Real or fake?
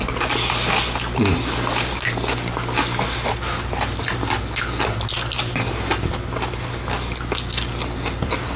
real